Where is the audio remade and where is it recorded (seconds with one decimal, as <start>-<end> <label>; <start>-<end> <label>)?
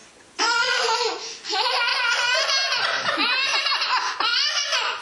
0.0-0.8 remade; 0.8-4.3 recorded; 4.3-5.0 remade